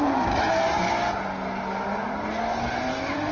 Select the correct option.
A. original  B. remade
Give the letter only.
A